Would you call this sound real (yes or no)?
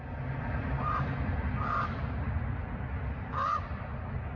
yes